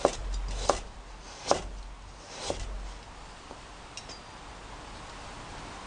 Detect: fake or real real